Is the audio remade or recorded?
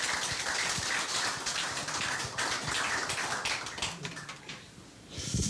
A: recorded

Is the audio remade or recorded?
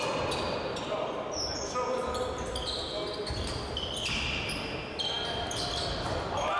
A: recorded